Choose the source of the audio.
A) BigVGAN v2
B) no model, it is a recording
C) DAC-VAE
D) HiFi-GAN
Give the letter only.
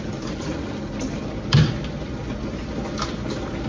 B